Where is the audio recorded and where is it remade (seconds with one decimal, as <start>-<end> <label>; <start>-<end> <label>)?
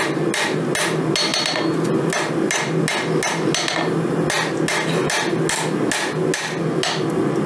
0.0-7.5 recorded